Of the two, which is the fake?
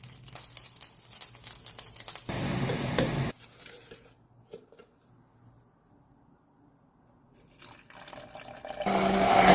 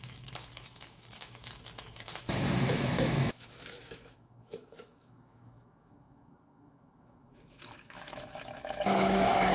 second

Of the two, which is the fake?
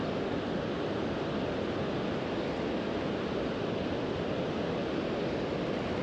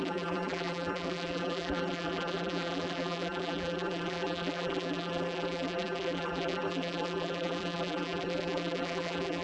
second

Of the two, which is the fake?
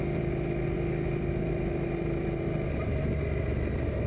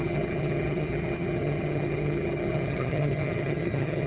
second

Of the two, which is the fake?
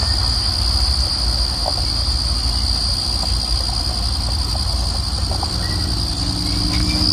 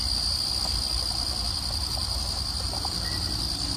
second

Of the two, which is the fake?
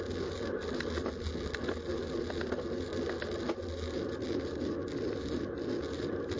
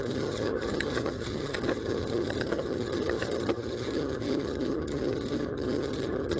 second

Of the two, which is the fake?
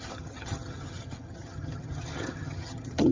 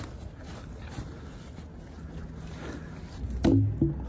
first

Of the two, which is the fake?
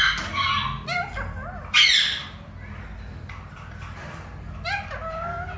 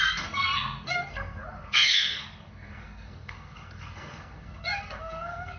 second